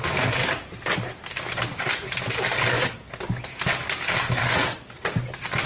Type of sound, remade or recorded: recorded